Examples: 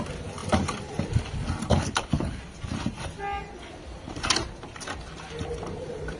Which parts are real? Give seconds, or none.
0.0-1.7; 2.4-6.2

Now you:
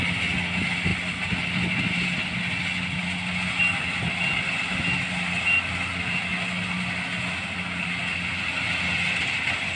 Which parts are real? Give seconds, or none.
0.0-9.8

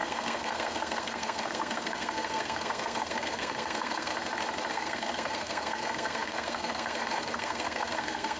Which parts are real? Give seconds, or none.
4.1-4.7

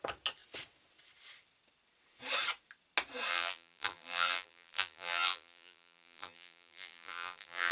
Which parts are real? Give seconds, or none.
0.0-3.3

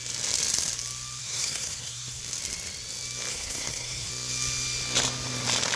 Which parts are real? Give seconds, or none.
0.0-1.2; 2.2-3.3; 4.1-5.8

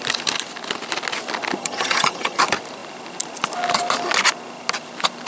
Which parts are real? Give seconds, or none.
0.0-1.6; 2.4-5.3

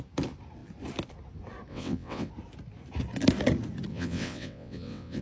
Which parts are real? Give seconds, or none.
0.0-1.7; 2.3-3.9